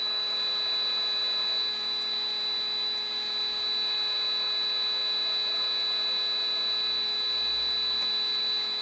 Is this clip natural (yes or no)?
yes